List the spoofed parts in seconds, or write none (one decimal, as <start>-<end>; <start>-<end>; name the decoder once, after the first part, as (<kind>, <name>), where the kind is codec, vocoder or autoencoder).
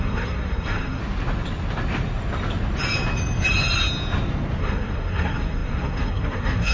0.0-1.0 (codec, SNAC); 4.6-6.7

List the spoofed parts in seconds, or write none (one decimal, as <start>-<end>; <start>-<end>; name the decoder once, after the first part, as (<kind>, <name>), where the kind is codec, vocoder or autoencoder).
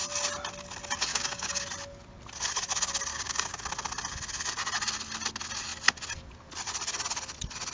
1.1-1.6 (codec, DAC); 3.1-3.6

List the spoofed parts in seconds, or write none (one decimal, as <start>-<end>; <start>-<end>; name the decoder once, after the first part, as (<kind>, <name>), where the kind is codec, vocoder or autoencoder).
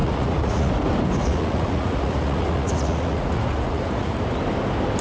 0.0-0.7 (vocoder, Vocos); 1.2-4.2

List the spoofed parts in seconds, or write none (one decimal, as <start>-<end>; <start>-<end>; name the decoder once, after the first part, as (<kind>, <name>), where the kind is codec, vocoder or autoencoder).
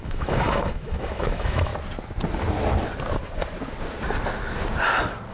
0.0-1.7 (autoencoder, DAC-VAE)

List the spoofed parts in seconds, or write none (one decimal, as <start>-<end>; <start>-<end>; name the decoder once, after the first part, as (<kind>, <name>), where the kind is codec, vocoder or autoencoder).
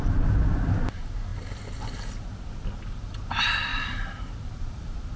none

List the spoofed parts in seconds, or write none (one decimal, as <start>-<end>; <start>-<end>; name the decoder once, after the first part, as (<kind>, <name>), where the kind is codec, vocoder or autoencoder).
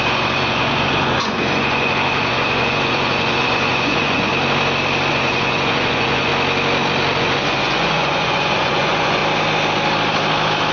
0.0-4.3 (vocoder, Vocos); 5.1-6.3; 7.2-9.2